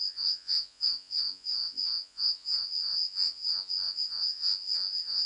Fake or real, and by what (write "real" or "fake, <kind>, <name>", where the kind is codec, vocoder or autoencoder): fake, vocoder, Vocos